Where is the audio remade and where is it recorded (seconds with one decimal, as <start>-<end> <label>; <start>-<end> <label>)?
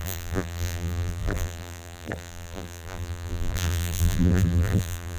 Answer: 0.0-5.2 remade